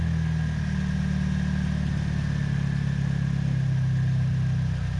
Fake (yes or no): no